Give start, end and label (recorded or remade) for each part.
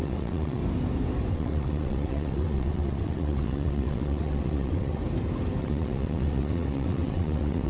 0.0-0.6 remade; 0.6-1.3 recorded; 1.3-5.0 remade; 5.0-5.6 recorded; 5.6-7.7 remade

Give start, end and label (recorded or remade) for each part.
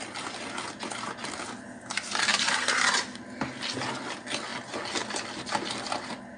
0.0-2.3 recorded; 2.3-3.2 remade; 3.2-6.4 recorded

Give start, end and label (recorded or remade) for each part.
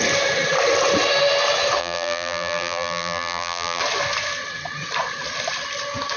0.0-1.8 recorded; 1.8-3.8 remade; 3.8-6.2 recorded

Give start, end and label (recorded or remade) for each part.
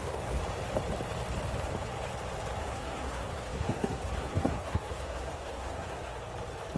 0.0-0.4 remade; 0.4-2.6 recorded; 2.6-6.1 remade; 6.1-6.8 recorded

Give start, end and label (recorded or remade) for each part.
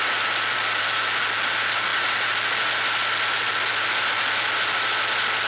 0.0-5.5 recorded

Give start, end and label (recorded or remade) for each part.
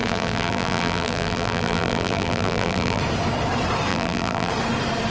0.0-3.0 remade; 3.0-3.9 recorded; 3.9-4.5 remade; 4.5-5.1 recorded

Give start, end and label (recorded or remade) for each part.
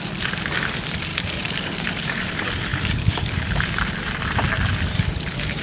0.0-1.1 recorded; 1.1-2.2 remade; 2.2-2.7 recorded; 2.7-3.4 remade; 3.4-5.6 recorded